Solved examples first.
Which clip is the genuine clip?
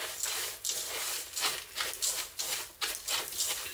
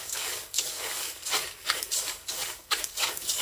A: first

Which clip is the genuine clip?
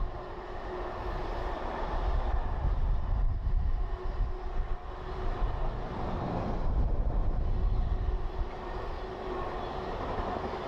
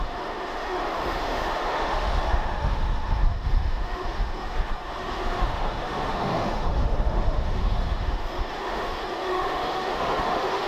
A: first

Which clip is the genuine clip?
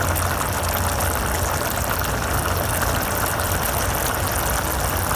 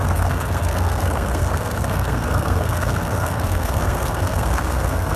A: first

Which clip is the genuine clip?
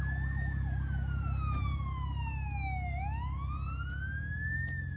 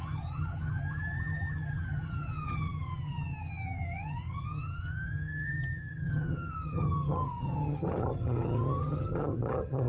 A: first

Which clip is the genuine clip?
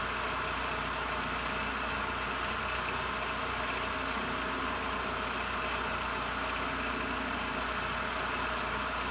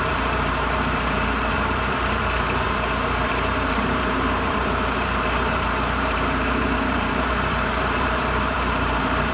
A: first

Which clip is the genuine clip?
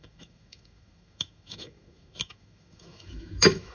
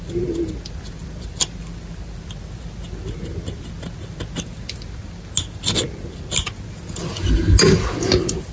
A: second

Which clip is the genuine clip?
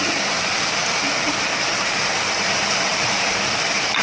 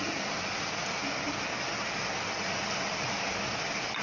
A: second